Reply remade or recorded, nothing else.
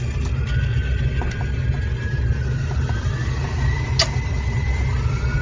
recorded